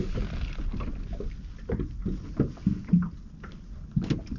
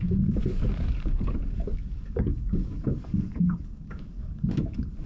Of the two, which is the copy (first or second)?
second